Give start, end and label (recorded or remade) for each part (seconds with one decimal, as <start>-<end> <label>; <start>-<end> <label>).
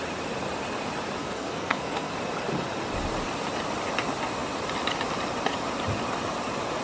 0.0-1.2 recorded; 1.2-2.1 remade; 2.1-6.8 recorded